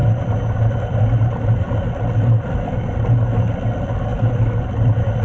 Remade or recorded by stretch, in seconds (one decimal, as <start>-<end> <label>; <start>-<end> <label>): 0.0-5.2 recorded